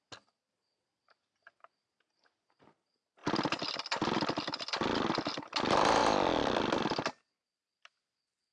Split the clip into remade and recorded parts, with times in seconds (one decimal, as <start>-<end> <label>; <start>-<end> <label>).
0.0-8.5 recorded